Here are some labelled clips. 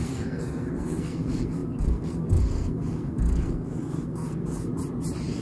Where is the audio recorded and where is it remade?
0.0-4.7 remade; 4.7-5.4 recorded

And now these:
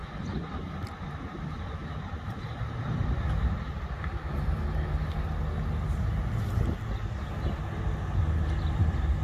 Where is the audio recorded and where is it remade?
0.0-9.2 recorded

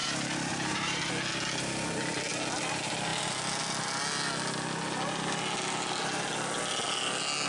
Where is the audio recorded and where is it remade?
0.0-1.1 remade; 1.1-7.5 recorded